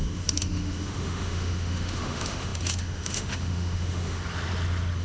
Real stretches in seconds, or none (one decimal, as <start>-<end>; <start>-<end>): 4.2-5.0